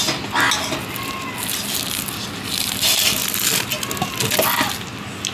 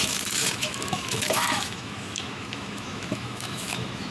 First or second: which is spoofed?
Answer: second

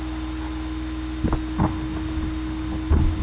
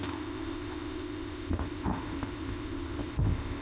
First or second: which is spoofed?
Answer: second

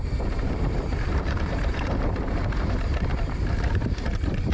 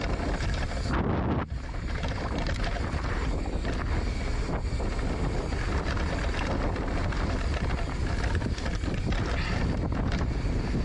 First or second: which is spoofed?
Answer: first